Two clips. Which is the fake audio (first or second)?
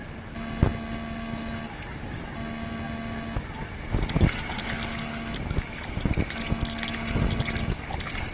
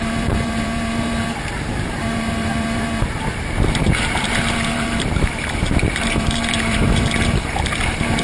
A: second